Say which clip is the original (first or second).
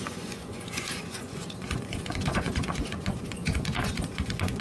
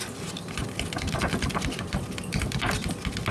second